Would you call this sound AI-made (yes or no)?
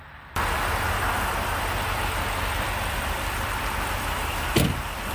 no